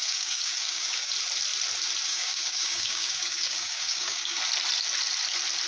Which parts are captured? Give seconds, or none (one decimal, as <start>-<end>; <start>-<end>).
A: 1.1-2.1; 4.4-5.7

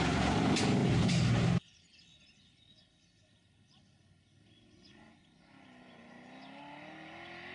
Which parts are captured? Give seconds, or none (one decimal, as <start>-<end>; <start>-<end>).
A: 0.0-7.5